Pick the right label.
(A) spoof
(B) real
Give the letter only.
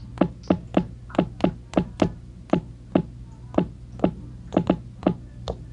B